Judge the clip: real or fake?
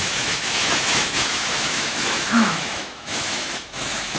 fake